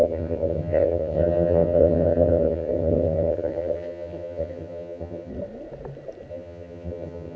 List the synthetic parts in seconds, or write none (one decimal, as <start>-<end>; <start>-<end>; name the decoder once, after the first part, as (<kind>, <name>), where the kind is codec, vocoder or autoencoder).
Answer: 0.0-5.3 (vocoder, HiFi-GAN); 6.3-7.4